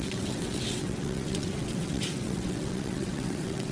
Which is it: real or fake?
fake